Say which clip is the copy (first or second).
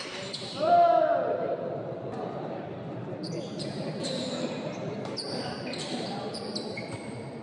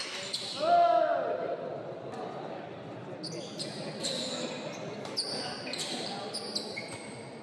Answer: first